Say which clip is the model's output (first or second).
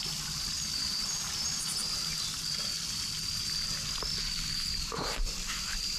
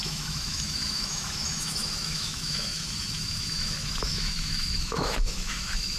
second